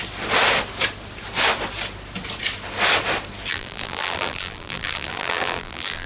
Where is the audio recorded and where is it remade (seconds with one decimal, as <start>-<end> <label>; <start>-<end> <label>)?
0.0-3.5 recorded; 3.5-6.1 remade